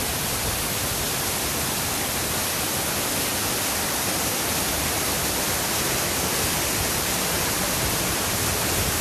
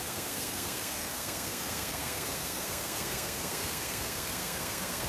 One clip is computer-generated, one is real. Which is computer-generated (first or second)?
second